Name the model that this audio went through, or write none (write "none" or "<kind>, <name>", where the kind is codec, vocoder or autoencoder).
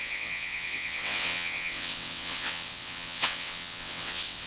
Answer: vocoder, WaveNeXt